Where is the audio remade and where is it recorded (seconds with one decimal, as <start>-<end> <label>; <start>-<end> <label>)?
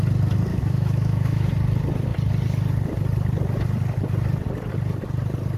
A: 0.0-0.5 recorded; 0.5-1.5 remade; 1.5-5.6 recorded